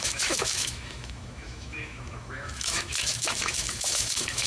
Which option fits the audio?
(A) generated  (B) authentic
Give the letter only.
A